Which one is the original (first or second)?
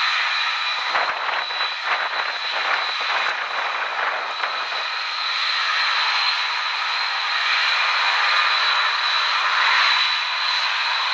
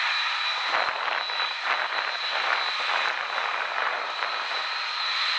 second